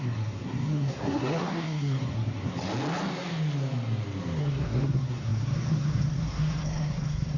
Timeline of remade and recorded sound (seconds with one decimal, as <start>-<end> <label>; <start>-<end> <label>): 0.0-2.5 remade; 2.5-4.4 recorded; 4.4-7.4 remade